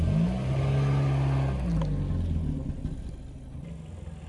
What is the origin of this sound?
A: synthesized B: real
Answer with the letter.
B